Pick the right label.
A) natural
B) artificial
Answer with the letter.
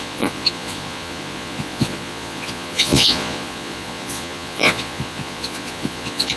B